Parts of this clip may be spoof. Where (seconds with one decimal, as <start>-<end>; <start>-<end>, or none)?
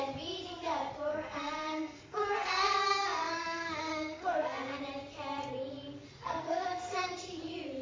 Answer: 1.1-4.8; 6.2-7.1